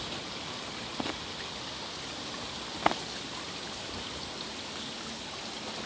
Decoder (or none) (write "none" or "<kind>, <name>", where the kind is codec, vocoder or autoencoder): none